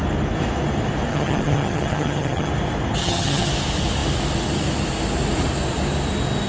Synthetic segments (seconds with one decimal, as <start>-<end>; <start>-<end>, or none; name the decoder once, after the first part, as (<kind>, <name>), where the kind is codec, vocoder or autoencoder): 1.1-2.5 (vocoder, HiFi-GAN); 3.0-3.5

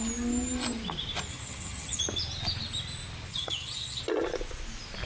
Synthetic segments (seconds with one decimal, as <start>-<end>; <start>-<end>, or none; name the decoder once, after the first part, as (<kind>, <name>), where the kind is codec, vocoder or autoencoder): 1.3-2.0 (vocoder, HiFi-GAN); 3.3-4.0

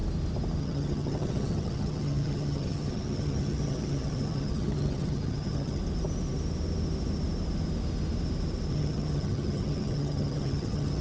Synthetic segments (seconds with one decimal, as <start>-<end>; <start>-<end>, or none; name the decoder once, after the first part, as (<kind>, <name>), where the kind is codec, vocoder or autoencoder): 0.6-5.8 (vocoder, HiFi-GAN); 8.7-11.0

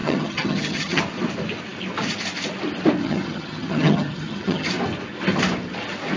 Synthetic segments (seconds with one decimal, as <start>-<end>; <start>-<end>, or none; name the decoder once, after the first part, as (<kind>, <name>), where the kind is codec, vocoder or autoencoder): 0.0-1.0 (vocoder, HiFi-GAN); 3.0-4.7

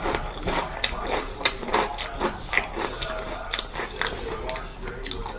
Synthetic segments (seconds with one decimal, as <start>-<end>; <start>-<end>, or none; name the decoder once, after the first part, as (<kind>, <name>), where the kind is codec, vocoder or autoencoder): none

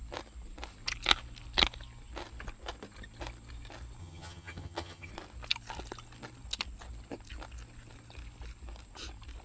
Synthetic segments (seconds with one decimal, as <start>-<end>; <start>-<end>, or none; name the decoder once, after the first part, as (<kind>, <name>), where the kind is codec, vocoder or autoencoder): 4.0-5.1 (vocoder, HiFi-GAN)

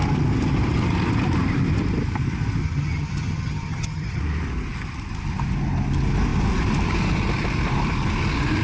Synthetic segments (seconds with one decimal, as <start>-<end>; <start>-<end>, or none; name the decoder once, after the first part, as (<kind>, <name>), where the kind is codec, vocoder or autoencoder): 2.6-4.2 (vocoder, HiFi-GAN)